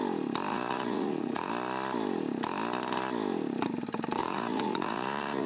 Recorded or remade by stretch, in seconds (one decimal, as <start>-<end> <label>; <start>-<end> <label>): 0.0-0.5 recorded; 0.5-1.5 remade; 1.5-4.2 recorded; 4.2-5.5 remade